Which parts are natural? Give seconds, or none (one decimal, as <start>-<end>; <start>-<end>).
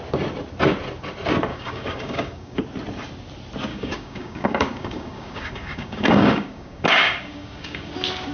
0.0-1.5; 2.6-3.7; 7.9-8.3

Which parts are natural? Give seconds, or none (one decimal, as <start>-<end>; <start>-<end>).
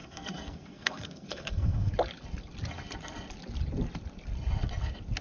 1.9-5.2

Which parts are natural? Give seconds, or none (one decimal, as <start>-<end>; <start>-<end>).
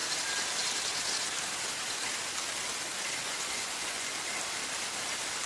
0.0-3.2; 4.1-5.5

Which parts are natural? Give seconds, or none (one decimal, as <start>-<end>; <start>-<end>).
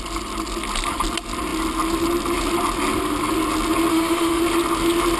0.0-3.9; 4.4-5.2